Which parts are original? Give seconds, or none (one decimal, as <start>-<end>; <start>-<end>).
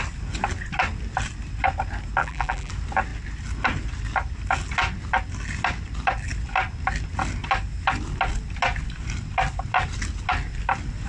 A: 0.0-2.2; 2.7-11.1